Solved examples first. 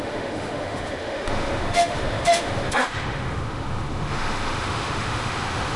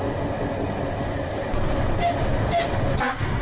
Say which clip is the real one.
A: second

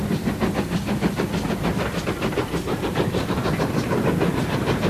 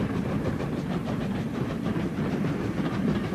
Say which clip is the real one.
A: first